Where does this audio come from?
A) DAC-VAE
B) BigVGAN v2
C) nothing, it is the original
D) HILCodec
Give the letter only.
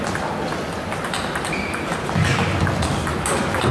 C